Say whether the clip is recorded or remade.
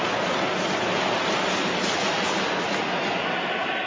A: recorded